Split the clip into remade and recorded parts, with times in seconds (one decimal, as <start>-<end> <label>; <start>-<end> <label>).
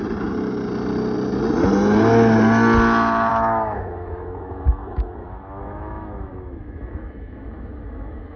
0.0-3.3 recorded; 3.3-8.4 remade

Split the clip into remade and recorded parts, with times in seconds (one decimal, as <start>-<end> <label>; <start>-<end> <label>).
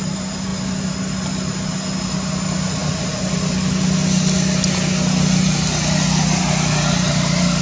0.0-7.6 recorded